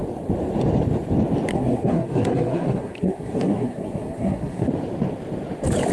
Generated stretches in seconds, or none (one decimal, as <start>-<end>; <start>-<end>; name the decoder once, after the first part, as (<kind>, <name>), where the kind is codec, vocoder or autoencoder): 1.5-4.7 (codec, SNAC)